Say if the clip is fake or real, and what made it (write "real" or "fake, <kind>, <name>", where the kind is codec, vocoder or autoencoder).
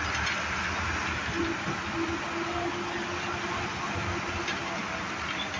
real